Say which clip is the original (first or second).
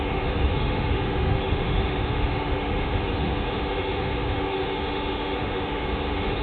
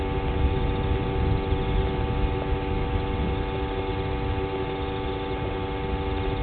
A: second